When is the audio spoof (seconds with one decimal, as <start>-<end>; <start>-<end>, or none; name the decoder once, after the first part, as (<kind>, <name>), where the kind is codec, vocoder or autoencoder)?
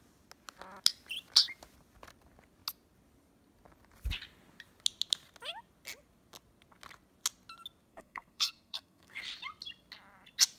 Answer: 7.9-9.2 (codec, SNAC)